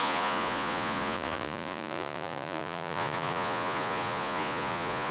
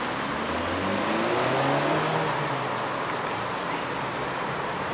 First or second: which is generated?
first